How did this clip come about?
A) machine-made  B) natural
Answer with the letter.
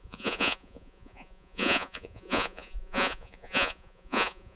A